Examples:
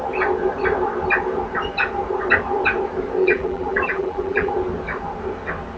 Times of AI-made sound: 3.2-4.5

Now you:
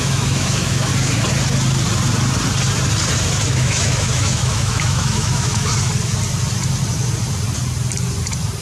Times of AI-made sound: 0.0-0.9; 3.5-5.7